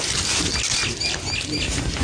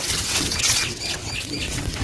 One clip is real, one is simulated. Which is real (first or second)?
first